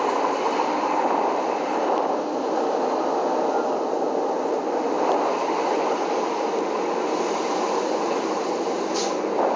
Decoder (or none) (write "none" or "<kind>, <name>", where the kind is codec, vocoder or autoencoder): none